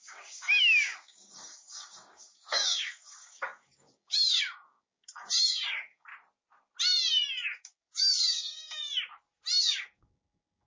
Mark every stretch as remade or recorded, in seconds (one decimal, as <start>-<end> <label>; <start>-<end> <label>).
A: 0.0-6.1 remade; 6.1-7.3 recorded; 7.3-8.8 remade; 8.8-9.6 recorded; 9.6-10.7 remade